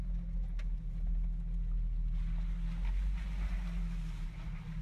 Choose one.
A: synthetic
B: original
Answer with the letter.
B